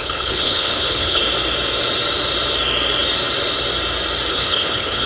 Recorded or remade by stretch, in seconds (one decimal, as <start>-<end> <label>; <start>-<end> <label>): 0.0-1.2 remade; 1.2-4.3 recorded; 4.3-5.1 remade